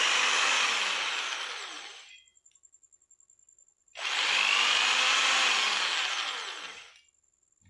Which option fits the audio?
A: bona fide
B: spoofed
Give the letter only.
A